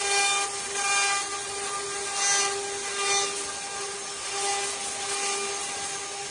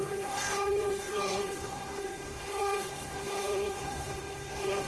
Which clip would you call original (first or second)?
first